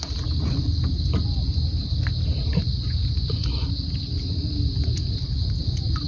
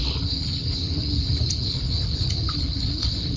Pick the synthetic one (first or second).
second